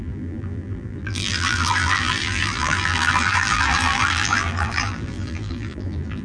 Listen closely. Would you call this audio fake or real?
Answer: fake